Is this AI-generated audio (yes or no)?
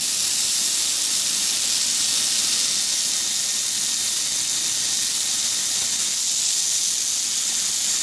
no